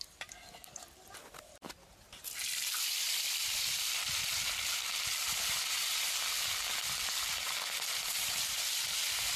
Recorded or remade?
remade